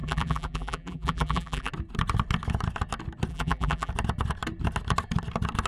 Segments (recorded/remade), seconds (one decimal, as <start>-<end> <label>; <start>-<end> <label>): 0.0-1.7 remade; 1.7-3.3 recorded; 3.3-3.9 remade; 3.9-5.7 recorded